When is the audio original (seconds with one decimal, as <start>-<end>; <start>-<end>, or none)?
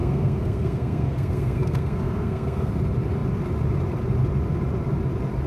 2.7-5.5